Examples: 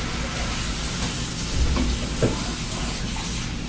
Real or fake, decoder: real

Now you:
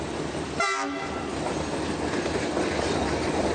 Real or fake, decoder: real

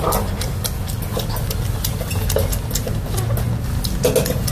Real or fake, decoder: real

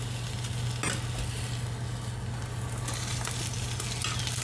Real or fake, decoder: real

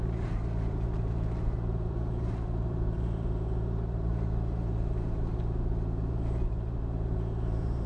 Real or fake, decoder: fake, vocoder, BigVGAN v2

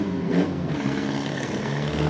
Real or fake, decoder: fake, codec, SNAC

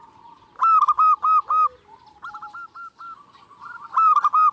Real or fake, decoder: real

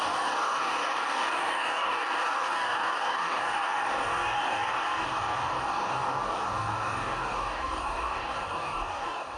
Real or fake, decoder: fake, codec, DAC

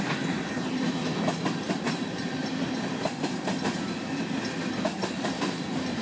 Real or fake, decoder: fake, vocoder, BigVGAN v2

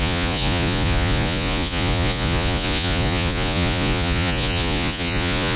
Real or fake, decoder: fake, vocoder, Vocos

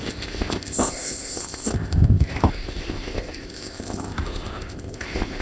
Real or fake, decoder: fake, codec, ZipCodec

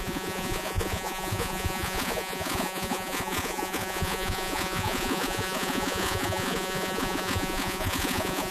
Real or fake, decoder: fake, vocoder, Vocos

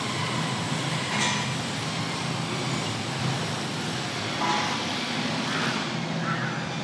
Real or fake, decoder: real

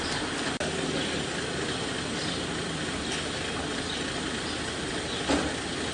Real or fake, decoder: real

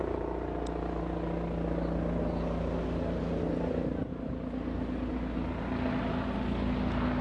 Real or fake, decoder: real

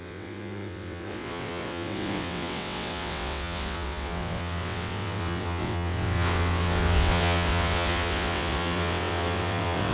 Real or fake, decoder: fake, vocoder, WaveNeXt